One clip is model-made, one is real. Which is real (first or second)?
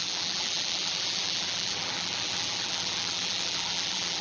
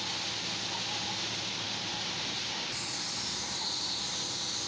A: second